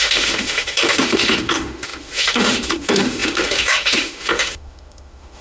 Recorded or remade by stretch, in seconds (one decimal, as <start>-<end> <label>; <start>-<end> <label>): 0.0-5.4 remade